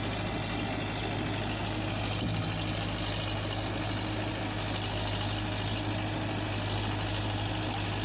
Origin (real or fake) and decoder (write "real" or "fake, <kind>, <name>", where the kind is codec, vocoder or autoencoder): real